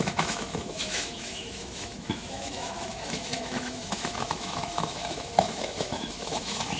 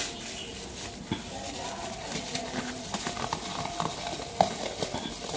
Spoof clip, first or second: first